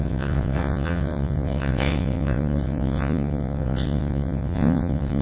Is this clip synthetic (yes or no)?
yes